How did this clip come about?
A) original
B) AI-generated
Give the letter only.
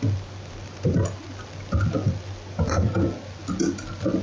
A